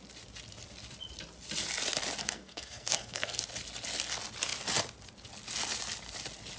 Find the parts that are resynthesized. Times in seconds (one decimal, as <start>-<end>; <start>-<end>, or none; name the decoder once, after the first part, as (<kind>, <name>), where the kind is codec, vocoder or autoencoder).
2.2-3.4 (codec, SNAC)

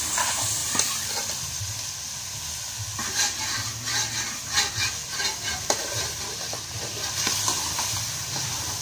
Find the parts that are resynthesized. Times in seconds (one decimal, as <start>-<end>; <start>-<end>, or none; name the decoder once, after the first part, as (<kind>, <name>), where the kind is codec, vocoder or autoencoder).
0.6-1.6 (vocoder, BigVGAN v2)

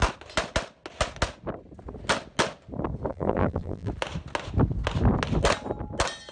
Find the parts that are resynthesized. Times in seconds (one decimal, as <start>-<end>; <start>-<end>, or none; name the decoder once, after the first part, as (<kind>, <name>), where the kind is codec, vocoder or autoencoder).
3.1-3.9 (vocoder, BigVGAN v2)

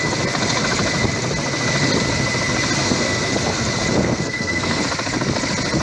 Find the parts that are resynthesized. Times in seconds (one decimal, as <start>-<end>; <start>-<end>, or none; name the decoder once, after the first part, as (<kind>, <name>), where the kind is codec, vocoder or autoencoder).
2.8-3.3 (codec, SNAC); 4.0-4.8

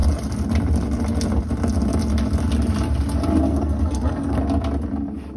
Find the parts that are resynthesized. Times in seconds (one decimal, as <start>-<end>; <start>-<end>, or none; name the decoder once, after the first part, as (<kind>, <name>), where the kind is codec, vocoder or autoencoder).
3.4-4.4 (codec, SNAC)

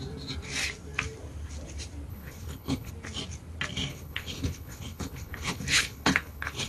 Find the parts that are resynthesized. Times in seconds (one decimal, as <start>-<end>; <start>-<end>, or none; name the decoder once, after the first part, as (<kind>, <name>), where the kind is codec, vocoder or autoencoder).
2.1-2.9 (codec, HILCodec); 3.9-6.7

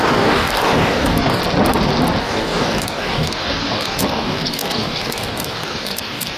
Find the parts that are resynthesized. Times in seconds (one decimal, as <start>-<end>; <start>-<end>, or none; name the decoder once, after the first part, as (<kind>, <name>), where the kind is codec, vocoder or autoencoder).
0.0-1.4 (codec, DAC); 2.2-6.4

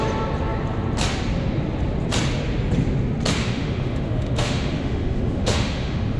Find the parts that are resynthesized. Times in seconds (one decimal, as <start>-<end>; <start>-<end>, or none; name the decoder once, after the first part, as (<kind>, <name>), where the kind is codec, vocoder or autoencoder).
3.4-6.2 (autoencoder, DAC-VAE)